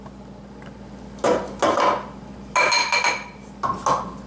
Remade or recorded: recorded